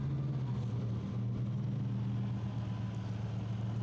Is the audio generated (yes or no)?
no